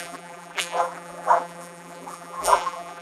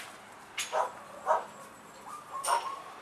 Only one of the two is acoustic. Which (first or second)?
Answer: second